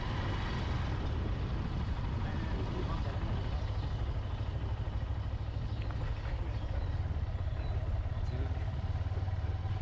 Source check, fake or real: real